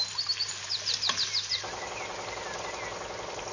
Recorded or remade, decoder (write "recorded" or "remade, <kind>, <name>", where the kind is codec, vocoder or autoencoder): recorded